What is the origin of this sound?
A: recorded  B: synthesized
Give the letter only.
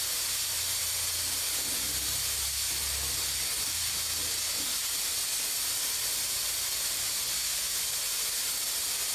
A